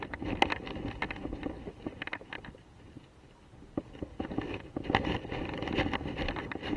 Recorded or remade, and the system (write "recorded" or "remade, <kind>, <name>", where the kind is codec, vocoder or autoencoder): recorded